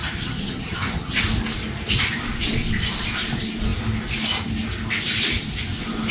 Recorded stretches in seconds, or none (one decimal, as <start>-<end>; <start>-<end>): 1.2-6.1